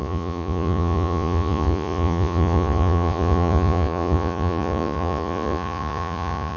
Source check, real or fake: fake